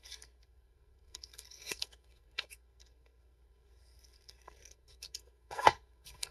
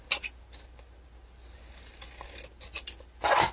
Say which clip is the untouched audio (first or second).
second